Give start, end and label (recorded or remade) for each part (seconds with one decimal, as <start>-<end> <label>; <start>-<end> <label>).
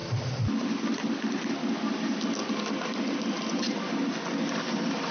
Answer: 0.0-5.1 recorded